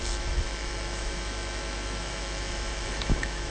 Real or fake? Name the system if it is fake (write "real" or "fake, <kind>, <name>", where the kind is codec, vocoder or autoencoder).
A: fake, autoencoder, DAC-VAE